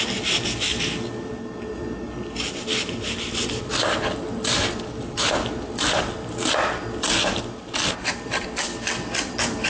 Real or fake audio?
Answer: real